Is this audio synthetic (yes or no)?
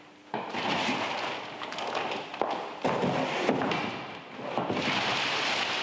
no